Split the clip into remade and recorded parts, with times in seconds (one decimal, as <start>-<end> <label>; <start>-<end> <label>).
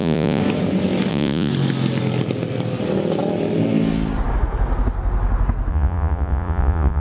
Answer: 0.0-0.4 remade; 0.4-1.1 recorded; 1.1-1.5 remade; 1.5-5.7 recorded; 5.7-7.0 remade